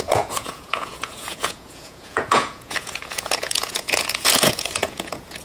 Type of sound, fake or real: fake